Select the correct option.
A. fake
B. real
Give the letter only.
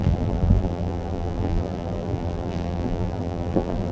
A